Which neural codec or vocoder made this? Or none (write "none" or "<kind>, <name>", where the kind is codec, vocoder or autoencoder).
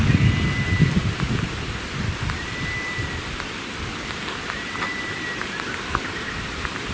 none